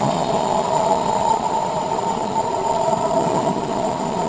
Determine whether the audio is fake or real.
fake